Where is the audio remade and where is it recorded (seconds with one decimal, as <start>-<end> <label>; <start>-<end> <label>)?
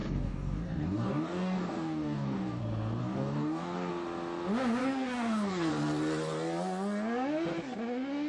0.0-2.6 remade; 2.6-3.0 recorded; 3.0-3.9 remade; 3.9-4.8 recorded; 4.8-5.7 remade; 5.7-8.3 recorded